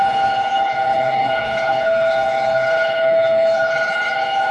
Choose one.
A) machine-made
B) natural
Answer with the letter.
A